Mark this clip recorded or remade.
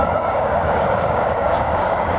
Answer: remade